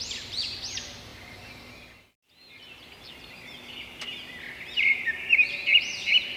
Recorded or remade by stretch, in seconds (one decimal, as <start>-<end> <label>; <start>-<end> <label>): 0.0-1.1 recorded; 1.1-1.7 remade; 1.7-6.4 recorded